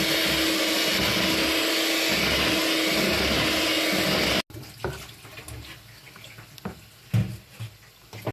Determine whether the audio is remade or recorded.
recorded